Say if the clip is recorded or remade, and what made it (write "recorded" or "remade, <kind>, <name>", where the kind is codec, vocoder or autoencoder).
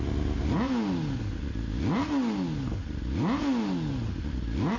recorded